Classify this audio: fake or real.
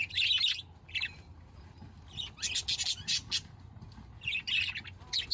real